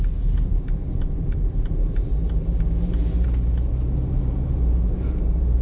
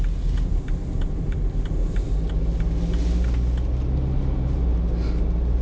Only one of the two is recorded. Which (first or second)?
second